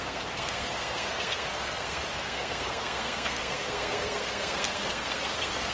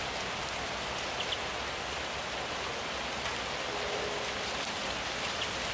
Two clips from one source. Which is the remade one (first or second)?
first